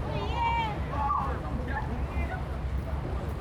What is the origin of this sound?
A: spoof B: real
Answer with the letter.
B